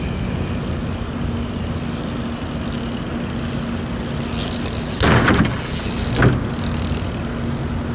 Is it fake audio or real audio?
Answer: real